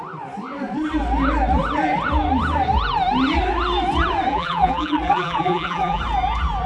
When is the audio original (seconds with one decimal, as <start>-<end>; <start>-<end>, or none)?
0.0-4.3; 6.0-6.7